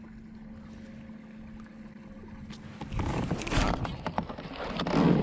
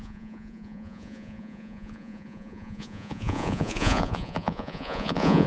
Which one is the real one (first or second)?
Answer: first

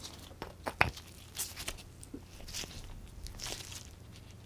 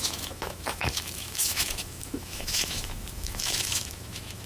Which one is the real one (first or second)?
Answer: first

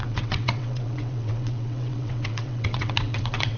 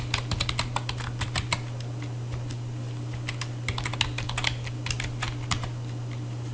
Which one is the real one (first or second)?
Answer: second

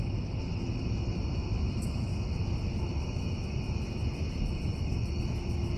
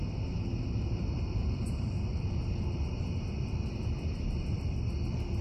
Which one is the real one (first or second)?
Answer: second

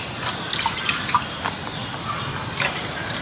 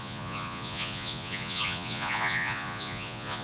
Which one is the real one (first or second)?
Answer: first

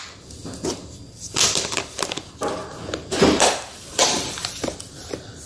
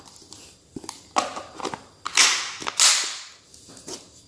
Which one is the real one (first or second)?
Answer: second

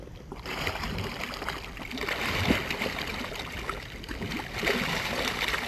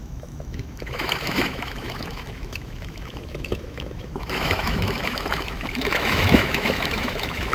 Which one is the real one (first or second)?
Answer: first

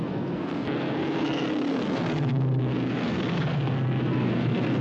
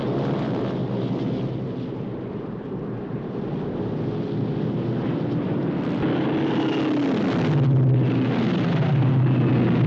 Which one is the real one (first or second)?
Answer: second